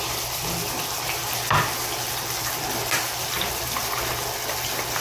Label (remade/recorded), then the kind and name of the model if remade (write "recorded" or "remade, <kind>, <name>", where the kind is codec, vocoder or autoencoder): recorded